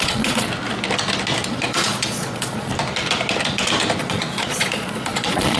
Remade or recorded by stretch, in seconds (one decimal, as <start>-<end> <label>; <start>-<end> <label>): 0.0-0.5 remade; 0.5-1.5 recorded; 1.5-2.7 remade; 2.7-4.0 recorded; 4.0-5.6 remade